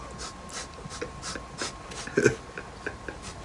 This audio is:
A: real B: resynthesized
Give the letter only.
A